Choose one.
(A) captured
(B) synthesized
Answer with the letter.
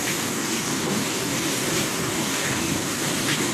B